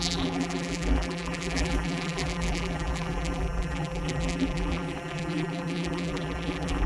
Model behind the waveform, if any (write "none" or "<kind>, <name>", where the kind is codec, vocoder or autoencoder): vocoder, BigVGAN v2